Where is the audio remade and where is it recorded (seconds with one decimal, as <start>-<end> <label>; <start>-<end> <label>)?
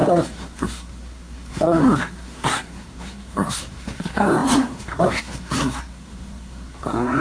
0.0-7.2 remade